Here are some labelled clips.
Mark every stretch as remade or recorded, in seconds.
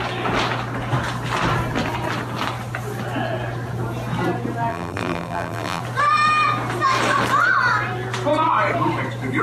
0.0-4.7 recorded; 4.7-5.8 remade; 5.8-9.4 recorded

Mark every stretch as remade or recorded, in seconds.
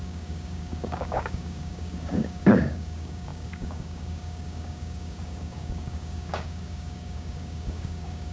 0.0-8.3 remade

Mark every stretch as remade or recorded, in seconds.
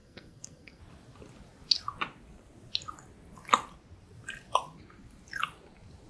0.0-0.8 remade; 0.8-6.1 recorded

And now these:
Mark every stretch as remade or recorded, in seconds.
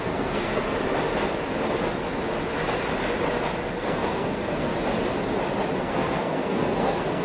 0.0-0.6 remade; 0.6-3.7 recorded; 3.7-4.7 remade; 4.7-5.8 recorded; 5.8-7.2 remade